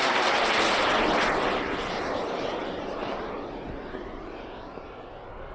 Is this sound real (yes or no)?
yes